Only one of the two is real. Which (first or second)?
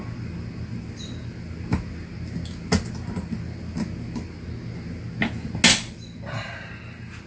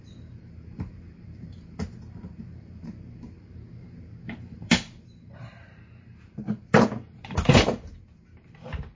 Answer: first